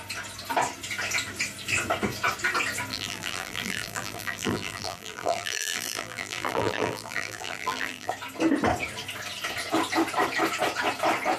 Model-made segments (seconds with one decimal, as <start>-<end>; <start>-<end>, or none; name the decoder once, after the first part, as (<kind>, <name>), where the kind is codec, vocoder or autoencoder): 2.9-8.1 (vocoder, BigVGAN v2)